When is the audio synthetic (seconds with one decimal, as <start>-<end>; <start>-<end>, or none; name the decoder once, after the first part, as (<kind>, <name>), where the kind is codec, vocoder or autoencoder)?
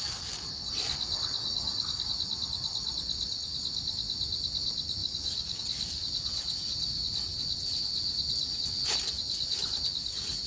1.4-2.1 (codec, DAC); 5.0-5.6